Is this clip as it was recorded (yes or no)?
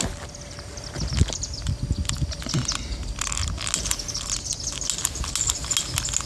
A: yes